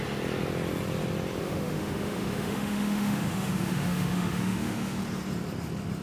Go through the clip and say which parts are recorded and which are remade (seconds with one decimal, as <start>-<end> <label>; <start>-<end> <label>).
0.0-1.4 recorded; 1.4-5.0 remade; 5.0-6.0 recorded